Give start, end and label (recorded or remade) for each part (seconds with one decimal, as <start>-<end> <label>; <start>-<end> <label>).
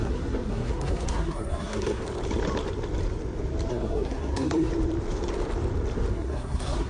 0.0-2.0 remade; 2.0-3.7 recorded; 3.7-4.7 remade; 4.7-6.1 recorded; 6.1-6.9 remade